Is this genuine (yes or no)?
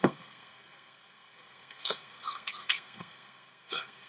no